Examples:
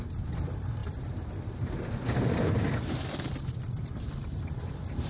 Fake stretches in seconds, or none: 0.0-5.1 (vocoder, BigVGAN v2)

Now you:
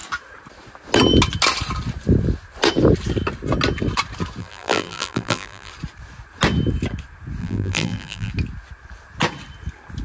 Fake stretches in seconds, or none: 4.4-5.7 (vocoder, BigVGAN v2); 7.4-8.3

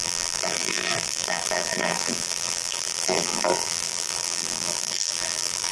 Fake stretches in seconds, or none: 0.0-5.7 (vocoder, BigVGAN v2)